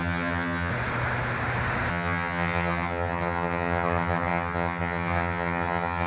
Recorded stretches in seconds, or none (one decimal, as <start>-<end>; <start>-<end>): 0.7-1.9